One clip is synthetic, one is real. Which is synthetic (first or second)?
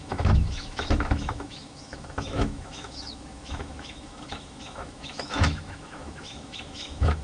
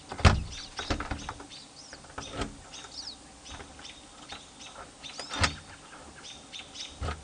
first